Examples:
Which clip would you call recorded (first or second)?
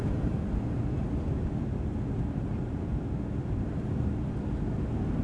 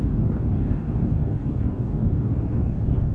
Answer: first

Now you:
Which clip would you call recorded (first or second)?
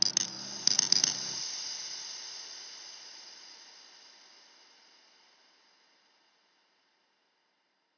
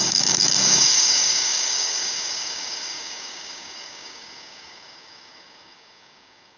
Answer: first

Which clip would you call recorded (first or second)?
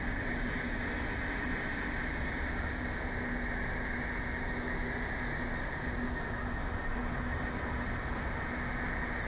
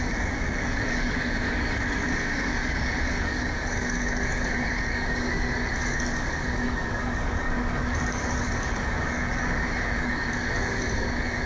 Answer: first